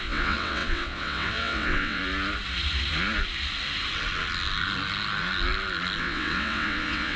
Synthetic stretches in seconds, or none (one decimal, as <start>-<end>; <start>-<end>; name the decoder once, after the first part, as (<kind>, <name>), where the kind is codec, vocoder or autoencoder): 0.0-2.0 (vocoder, WaveNeXt); 6.0-7.2